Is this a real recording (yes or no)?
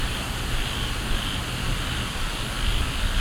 yes